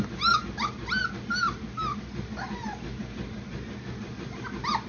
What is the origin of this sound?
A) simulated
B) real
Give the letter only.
B